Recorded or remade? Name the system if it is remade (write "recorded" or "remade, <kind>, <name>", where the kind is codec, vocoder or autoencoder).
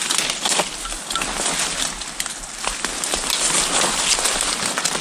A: recorded